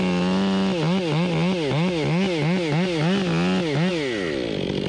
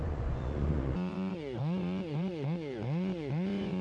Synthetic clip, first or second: second